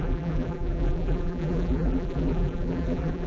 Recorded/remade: remade